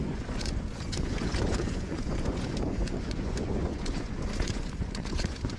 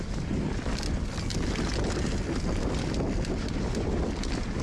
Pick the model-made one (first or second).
first